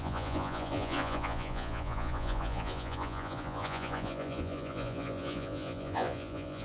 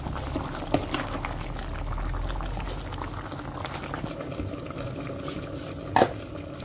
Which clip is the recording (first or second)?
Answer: second